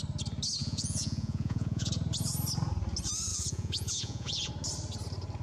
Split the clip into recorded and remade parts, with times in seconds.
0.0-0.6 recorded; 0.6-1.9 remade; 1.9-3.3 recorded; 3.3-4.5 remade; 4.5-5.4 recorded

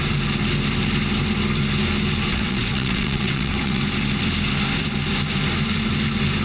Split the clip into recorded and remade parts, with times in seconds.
0.0-2.3 recorded; 2.3-3.8 remade; 3.8-6.4 recorded

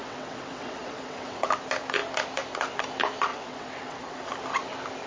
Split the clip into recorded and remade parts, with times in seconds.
0.0-1.5 remade; 1.5-3.3 recorded; 3.3-4.3 remade; 4.3-5.1 recorded

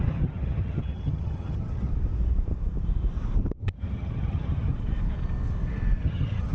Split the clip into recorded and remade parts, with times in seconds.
0.0-1.9 remade; 1.9-3.6 recorded; 3.6-4.7 remade; 4.7-6.0 recorded; 6.0-6.5 remade

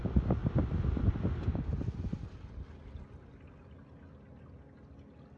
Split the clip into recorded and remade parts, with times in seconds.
0.0-5.4 recorded

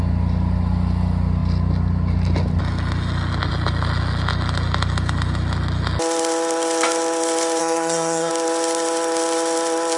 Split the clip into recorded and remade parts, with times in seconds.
0.0-7.6 recorded; 7.6-8.3 remade; 8.3-10.0 recorded

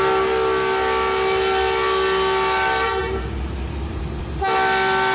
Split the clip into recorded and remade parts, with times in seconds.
0.0-3.0 recorded; 3.0-4.0 remade; 4.0-5.1 recorded